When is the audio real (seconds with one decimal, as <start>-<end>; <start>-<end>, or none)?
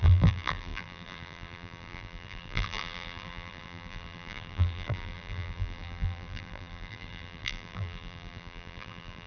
none